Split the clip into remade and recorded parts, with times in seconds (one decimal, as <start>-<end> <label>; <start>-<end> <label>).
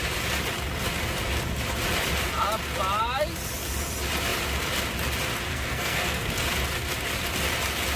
0.0-5.5 recorded; 5.5-6.3 remade; 6.3-8.0 recorded